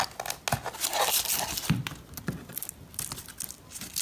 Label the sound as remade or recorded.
recorded